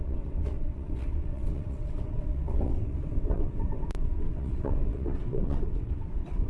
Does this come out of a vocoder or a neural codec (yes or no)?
yes